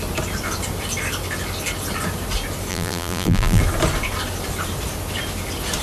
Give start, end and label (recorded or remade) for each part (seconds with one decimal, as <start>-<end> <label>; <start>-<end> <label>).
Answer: 0.0-2.7 recorded; 2.7-3.6 remade; 3.6-5.8 recorded